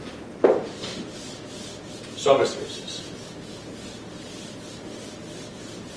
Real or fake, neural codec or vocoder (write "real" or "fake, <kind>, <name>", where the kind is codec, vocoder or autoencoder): real